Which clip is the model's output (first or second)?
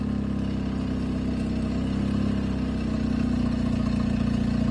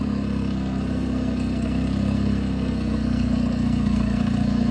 second